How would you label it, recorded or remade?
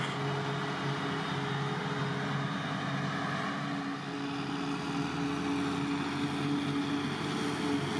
recorded